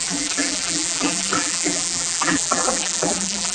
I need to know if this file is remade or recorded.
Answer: remade